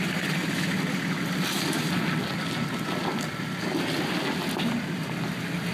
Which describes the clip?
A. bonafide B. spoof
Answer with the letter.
A